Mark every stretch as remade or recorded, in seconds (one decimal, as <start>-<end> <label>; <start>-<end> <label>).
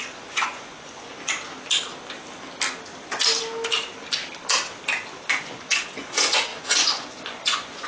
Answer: 0.0-1.1 remade; 1.1-5.4 recorded; 5.4-7.9 remade